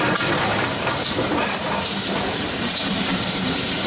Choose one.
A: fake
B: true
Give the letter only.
A